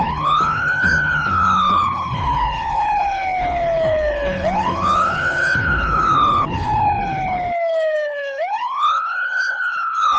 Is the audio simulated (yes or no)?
yes